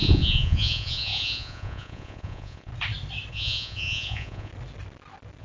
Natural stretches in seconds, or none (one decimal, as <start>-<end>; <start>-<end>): 2.7-3.3; 4.5-5.4